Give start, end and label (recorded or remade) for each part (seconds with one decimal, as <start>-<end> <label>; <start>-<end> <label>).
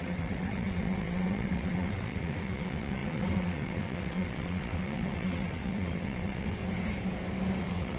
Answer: 0.0-6.6 remade; 6.6-7.6 recorded; 7.6-8.0 remade